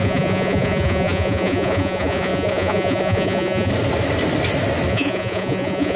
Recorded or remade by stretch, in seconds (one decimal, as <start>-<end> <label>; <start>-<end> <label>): 0.0-3.7 remade; 3.7-4.9 recorded; 4.9-6.0 remade